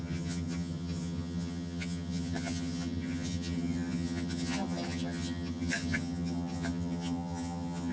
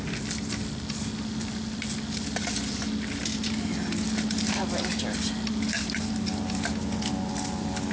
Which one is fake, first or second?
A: first